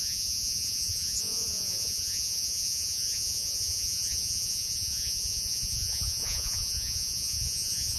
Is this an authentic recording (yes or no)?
no